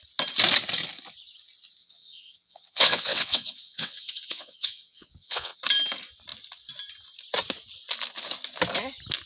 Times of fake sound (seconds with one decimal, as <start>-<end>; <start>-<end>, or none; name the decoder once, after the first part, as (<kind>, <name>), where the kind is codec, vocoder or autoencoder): 1.8-5.6 (vocoder, WaveNeXt)